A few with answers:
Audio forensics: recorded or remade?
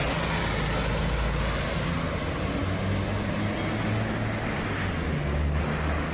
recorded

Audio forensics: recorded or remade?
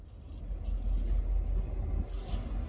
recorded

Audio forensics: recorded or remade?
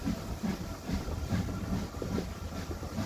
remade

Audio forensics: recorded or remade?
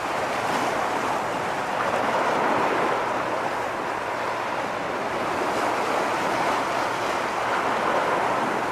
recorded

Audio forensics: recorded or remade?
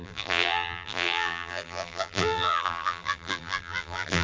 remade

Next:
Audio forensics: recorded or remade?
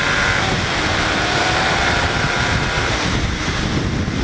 remade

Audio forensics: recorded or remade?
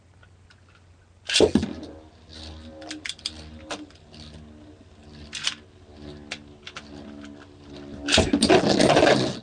recorded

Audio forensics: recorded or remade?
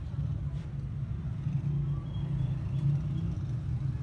remade